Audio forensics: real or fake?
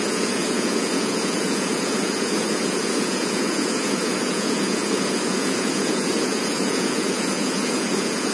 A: fake